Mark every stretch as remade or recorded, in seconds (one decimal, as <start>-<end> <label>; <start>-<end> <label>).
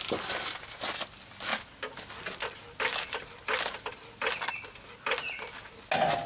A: 0.0-6.3 recorded